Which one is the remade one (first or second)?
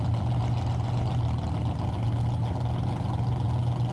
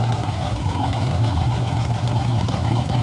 second